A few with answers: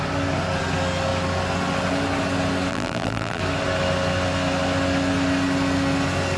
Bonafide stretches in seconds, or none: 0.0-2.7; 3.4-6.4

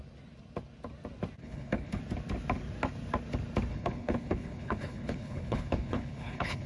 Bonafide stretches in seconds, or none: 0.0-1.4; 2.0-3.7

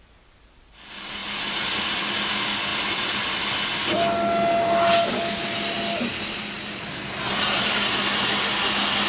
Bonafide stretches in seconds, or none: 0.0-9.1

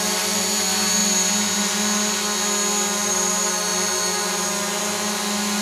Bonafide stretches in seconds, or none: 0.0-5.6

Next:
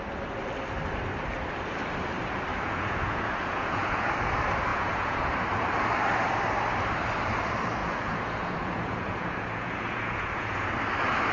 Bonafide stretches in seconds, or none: 0.0-2.5; 4.1-4.7; 5.3-7.8; 10.7-11.3

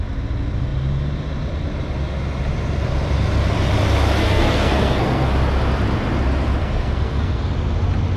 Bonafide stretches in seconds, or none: 0.0-4.2; 5.3-6.6; 7.4-8.2

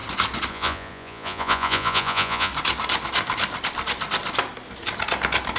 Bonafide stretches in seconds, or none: 0.0-0.5; 2.5-5.6